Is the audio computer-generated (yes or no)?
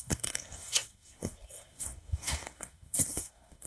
yes